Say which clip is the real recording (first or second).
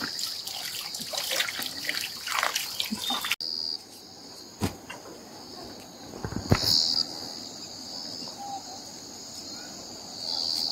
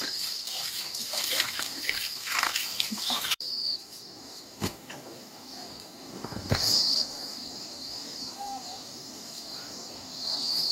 first